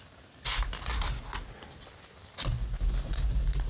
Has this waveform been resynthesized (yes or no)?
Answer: no